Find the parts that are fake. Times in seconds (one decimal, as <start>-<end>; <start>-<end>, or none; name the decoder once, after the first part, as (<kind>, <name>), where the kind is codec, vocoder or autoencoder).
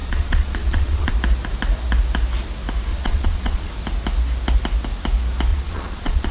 0.0-1.1 (vocoder, Vocos); 2.9-3.7; 5.5-6.3